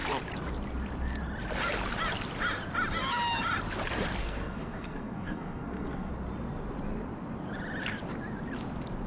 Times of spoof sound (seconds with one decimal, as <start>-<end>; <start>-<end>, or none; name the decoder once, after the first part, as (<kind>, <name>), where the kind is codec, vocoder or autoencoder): 4.2-6.1 (codec, SNAC)